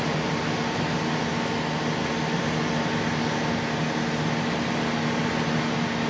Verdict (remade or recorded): recorded